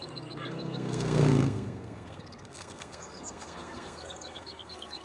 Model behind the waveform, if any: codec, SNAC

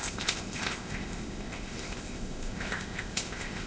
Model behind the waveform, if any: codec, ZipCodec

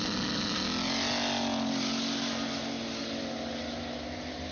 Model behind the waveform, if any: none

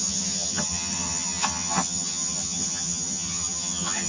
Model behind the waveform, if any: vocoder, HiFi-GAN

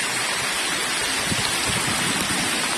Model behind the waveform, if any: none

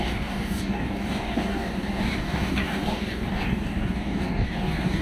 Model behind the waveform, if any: codec, DAC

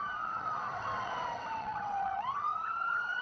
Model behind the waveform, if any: vocoder, WaveNeXt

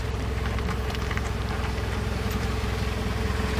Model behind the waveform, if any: vocoder, BigVGAN v2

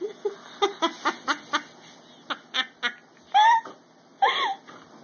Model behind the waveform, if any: none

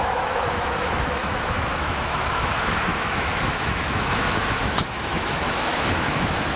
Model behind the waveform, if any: autoencoder, DAC-VAE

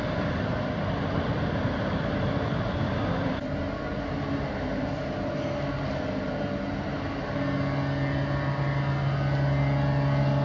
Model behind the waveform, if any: none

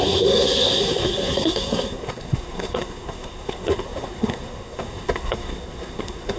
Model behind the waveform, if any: codec, SNAC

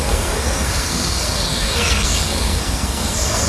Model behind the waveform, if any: codec, SNAC